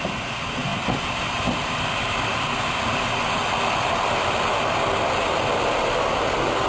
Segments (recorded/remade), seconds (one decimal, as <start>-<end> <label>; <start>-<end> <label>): 0.0-6.7 recorded